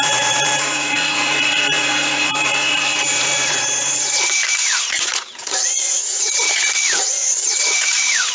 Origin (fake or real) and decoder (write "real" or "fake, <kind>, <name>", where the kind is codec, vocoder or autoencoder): fake, vocoder, Vocos